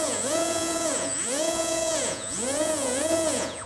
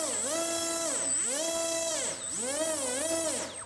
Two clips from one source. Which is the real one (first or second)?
second